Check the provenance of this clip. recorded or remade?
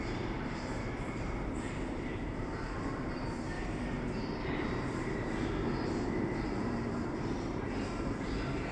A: remade